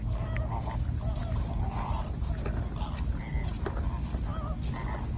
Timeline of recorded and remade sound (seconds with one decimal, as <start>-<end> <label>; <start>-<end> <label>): 0.0-5.2 recorded